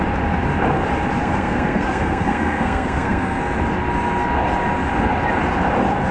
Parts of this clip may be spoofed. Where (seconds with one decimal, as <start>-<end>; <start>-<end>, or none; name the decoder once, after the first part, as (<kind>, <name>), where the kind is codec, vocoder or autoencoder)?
1.2-3.4 (codec, SNAC)